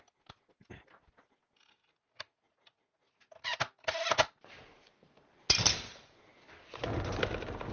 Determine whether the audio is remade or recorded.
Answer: recorded